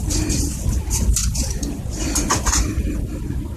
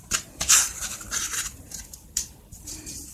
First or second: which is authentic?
first